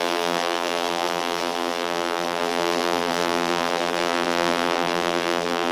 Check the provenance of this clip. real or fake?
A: fake